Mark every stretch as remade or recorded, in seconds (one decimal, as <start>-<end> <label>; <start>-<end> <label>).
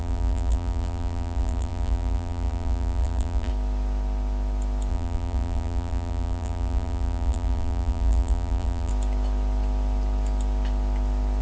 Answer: 0.0-3.5 remade; 3.5-4.9 recorded; 4.9-8.9 remade; 8.9-11.4 recorded